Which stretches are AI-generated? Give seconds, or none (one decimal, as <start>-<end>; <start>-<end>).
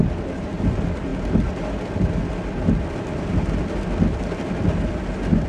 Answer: none